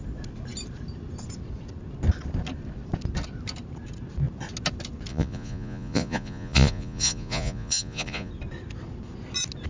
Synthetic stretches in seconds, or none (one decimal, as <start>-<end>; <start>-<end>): 5.1-8.3